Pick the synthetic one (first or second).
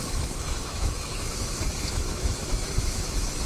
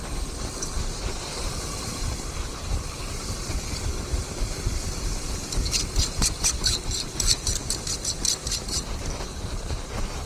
first